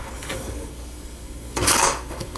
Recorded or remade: remade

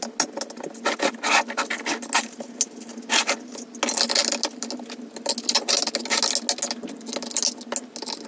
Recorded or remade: recorded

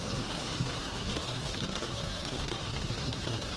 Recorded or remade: remade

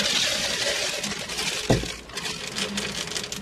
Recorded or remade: recorded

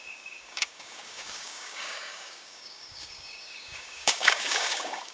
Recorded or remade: remade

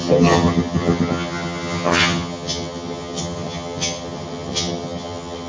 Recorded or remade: remade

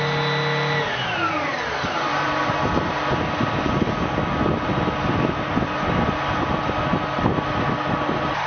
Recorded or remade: recorded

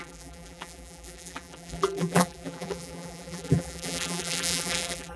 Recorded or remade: remade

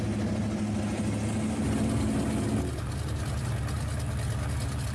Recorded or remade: recorded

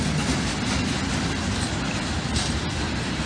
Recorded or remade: recorded